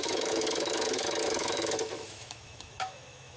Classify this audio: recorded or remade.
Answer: remade